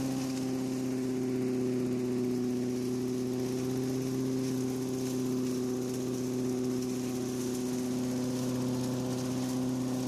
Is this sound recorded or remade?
recorded